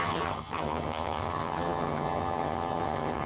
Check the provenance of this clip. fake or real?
fake